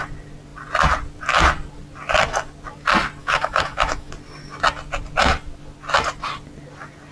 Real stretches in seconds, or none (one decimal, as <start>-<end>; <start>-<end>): 0.0-3.2; 4.1-7.1